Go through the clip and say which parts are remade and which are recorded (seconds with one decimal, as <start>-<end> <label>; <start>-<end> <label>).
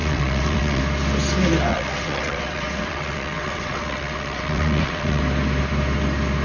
0.0-0.8 remade; 0.8-1.7 recorded; 1.7-5.2 remade; 5.2-6.4 recorded